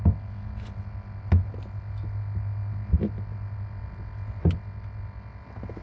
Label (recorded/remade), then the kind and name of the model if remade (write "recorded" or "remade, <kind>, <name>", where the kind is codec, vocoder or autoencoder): recorded